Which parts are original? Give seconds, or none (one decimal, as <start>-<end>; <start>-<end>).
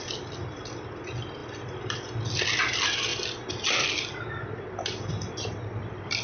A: 0.0-6.2